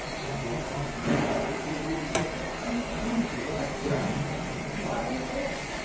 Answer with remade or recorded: remade